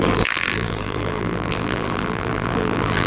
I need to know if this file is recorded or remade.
remade